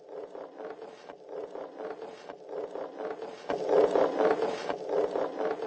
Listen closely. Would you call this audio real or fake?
real